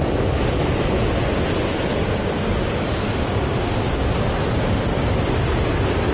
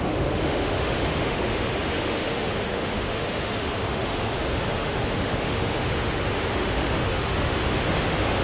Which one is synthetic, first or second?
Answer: second